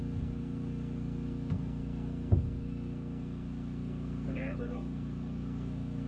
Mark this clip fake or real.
fake